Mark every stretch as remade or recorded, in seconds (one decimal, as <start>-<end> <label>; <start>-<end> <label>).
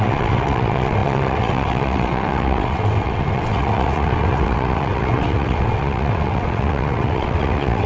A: 0.0-7.9 remade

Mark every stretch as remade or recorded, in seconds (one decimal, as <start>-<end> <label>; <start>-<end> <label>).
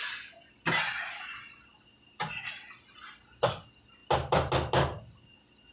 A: 0.0-5.7 recorded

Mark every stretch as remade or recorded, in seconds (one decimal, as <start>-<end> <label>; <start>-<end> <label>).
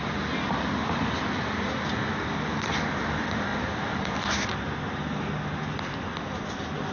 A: 0.0-6.9 recorded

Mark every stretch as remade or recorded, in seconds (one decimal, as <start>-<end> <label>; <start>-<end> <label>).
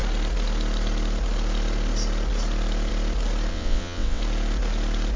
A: 0.0-3.5 recorded; 3.5-4.2 remade; 4.2-5.2 recorded